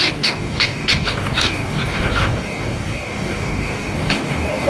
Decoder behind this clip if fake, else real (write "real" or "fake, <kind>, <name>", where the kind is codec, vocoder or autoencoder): fake, codec, DAC